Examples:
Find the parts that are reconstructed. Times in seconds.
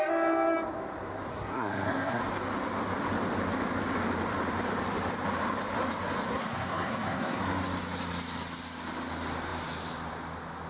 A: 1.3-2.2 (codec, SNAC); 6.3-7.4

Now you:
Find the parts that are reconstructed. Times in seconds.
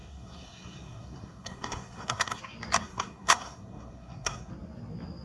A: 0.0-2.4 (codec, SNAC); 2.8-4.5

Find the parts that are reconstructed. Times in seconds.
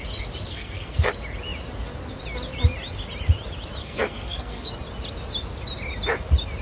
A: 0.5-1.1 (codec, SNAC); 3.8-4.7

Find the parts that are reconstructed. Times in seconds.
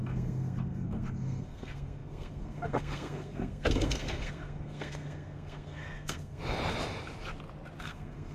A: 0.0-6.4 (codec, SNAC); 7.8-8.3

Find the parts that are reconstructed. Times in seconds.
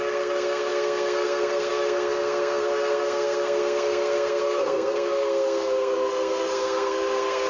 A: 0.0-7.5 (codec, SNAC)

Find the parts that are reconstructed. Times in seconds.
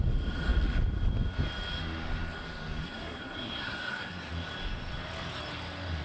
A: 2.8-4.3 (codec, SNAC)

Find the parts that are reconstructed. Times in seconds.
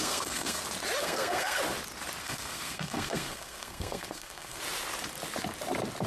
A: 0.0-0.6 (codec, SNAC); 1.0-1.6; 2.2-4.6